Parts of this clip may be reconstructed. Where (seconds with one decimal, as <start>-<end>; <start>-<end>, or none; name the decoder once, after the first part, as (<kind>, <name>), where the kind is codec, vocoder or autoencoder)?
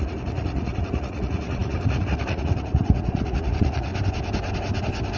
0.0-3.9 (vocoder, Vocos)